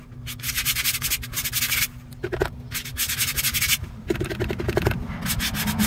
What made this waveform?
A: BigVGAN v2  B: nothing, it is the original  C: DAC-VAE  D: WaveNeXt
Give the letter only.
B